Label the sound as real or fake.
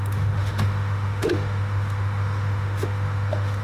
fake